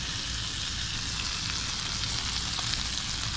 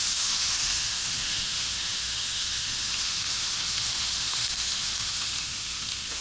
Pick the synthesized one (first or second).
second